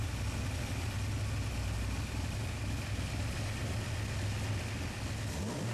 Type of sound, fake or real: real